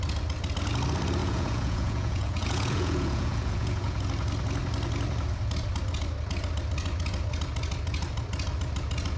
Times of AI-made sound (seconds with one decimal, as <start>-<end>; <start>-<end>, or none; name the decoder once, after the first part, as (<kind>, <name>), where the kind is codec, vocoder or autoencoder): 1.2-4.0 (vocoder, Vocos)